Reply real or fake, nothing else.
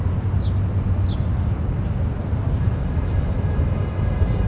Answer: real